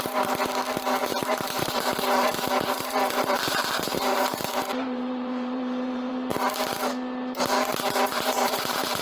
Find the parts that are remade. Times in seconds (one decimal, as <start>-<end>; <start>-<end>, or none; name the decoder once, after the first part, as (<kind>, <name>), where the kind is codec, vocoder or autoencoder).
1.0-6.1 (vocoder, BigVGAN v2); 8.1-9.0